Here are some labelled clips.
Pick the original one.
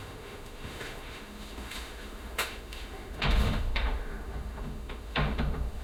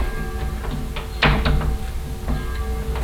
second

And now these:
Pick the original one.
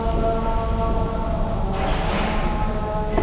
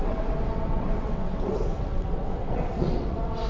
first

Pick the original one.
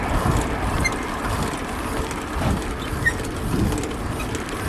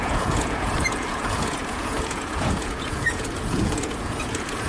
first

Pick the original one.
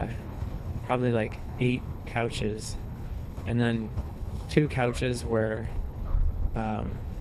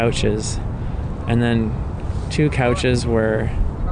second